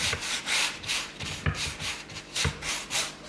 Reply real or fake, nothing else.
fake